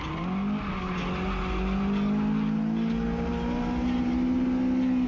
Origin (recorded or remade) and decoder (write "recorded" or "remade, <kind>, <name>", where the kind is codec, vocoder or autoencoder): recorded